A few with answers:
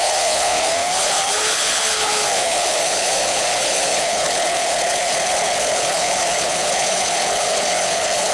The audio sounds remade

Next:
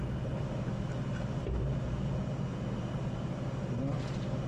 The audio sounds recorded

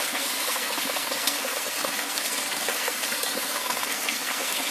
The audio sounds remade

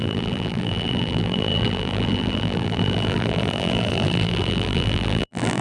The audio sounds remade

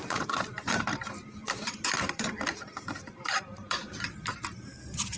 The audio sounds remade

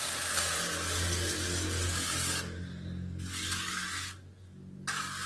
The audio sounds recorded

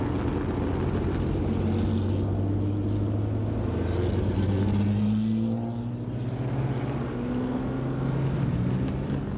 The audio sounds recorded